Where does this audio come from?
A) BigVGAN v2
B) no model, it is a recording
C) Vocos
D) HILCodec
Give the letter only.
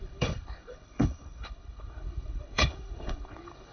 D